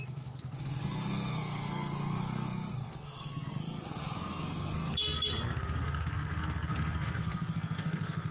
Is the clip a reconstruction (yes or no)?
yes